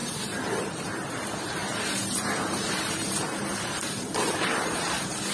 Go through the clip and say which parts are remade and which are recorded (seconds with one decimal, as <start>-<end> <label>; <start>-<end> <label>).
0.0-5.3 remade